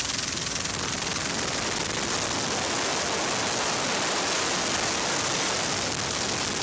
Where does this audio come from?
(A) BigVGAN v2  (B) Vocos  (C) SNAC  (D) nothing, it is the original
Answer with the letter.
D